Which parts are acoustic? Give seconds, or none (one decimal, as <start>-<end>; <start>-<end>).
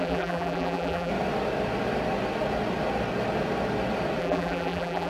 1.1-4.2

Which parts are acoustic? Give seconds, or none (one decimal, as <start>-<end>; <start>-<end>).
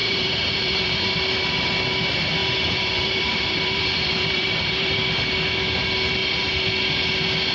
1.0-2.4; 5.0-7.5